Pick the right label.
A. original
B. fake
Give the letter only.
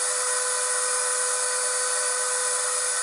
A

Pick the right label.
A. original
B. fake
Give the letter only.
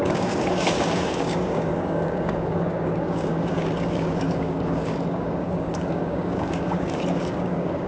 B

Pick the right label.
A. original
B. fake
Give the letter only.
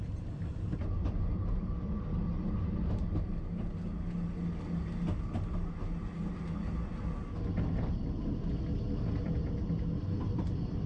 A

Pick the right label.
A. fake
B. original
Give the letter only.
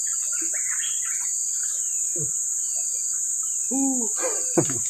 B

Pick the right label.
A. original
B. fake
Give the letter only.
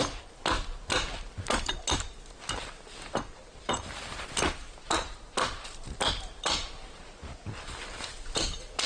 A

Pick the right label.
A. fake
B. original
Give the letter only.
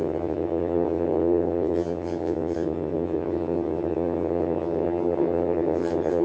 A